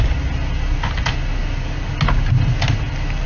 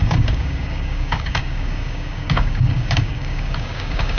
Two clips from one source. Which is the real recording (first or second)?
first